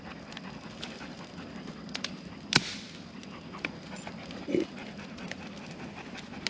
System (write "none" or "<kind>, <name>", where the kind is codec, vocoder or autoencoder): none